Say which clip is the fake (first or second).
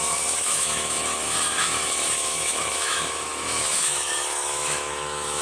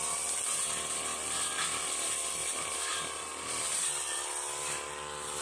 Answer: first